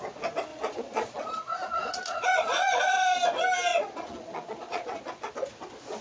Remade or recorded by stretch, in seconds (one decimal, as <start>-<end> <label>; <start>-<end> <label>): 0.0-0.5 recorded; 0.5-2.9 remade; 2.9-3.7 recorded; 3.7-5.3 remade; 5.3-6.0 recorded